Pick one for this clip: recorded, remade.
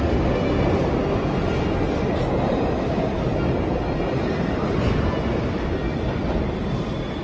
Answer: recorded